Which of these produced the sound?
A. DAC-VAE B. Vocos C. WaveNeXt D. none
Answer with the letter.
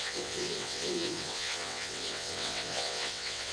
C